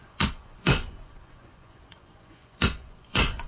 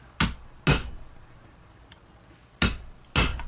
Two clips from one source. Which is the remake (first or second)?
first